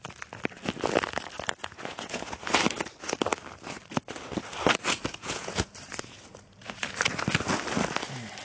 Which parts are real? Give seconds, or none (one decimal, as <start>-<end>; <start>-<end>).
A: 0.0-1.6; 2.4-5.1; 5.7-8.4